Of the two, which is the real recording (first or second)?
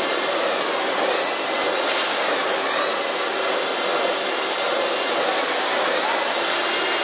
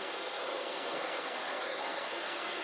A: first